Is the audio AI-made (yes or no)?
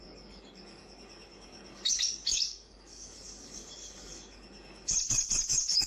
yes